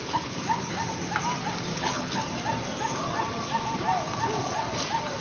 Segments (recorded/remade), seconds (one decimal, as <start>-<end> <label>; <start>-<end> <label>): 0.0-0.7 remade; 0.7-1.7 recorded; 1.7-2.2 remade; 2.2-5.2 recorded